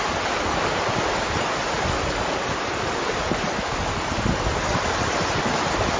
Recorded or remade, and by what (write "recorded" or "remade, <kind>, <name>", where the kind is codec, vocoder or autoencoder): recorded